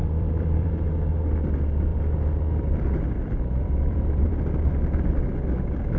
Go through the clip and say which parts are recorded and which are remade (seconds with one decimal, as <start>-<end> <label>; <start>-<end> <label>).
0.0-0.7 remade; 0.7-1.9 recorded; 1.9-4.3 remade; 4.3-6.0 recorded